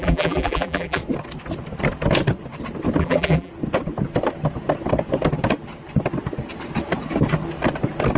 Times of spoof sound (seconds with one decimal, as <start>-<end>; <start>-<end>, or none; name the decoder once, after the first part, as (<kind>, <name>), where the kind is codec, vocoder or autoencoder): 0.0-1.0 (vocoder, BigVGAN v2); 3.0-3.5